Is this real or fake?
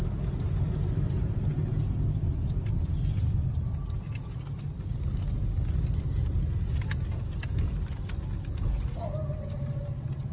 real